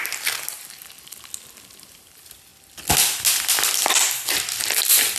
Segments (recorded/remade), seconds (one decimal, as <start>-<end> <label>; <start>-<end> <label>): 0.0-5.2 recorded